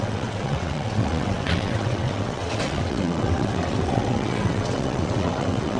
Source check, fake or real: fake